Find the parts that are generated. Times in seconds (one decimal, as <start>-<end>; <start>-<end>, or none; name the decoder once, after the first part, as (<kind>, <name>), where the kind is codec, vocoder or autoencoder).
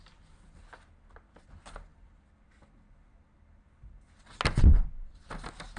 none